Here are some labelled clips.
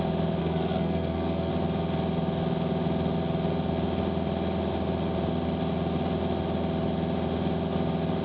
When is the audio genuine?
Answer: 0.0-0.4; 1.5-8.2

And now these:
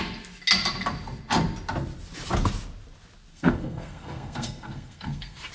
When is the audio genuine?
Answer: 0.0-3.3